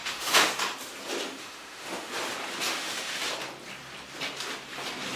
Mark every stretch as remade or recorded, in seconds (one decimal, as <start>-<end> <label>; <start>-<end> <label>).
0.0-0.5 remade; 0.5-1.2 recorded; 1.2-2.1 remade; 2.1-2.7 recorded; 2.7-3.2 remade; 3.2-5.2 recorded